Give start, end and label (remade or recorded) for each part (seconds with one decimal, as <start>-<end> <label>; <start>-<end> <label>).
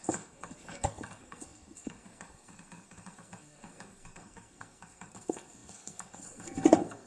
0.0-7.1 remade